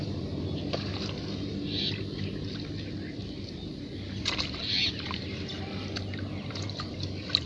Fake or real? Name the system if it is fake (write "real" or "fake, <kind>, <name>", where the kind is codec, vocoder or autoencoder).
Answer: real